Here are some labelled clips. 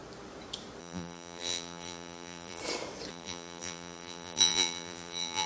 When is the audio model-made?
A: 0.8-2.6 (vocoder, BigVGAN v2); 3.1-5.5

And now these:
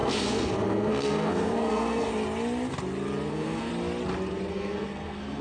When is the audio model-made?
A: 0.0-2.1 (codec, SNAC); 3.3-3.7; 4.5-5.4

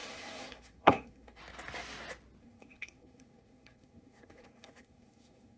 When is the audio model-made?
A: 0.0-1.4 (codec, SNAC); 2.4-5.6

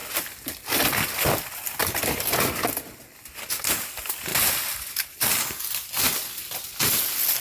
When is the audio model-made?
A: none